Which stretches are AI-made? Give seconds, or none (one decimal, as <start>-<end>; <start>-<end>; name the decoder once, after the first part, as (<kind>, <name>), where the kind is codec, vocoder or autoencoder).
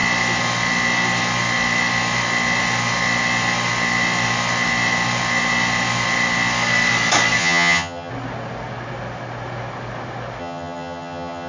7.4-8.1 (vocoder, HiFi-GAN); 10.4-11.5